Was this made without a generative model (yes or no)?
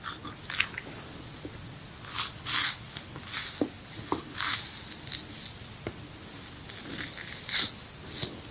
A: yes